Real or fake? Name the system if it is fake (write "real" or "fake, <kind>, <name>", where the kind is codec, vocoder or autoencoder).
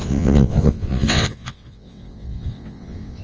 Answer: fake, vocoder, WaveNeXt